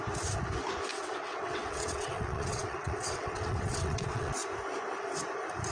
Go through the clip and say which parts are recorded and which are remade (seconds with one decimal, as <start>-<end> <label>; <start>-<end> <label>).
0.0-0.9 recorded; 0.9-4.3 remade; 4.3-5.7 recorded